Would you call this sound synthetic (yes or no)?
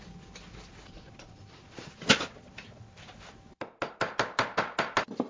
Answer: no